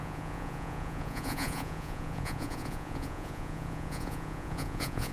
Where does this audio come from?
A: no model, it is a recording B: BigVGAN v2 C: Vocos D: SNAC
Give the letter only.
C